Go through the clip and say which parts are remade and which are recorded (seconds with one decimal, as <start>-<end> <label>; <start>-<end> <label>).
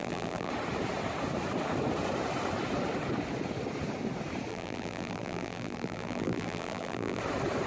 0.0-0.5 remade; 0.5-4.5 recorded; 4.5-7.2 remade; 7.2-7.7 recorded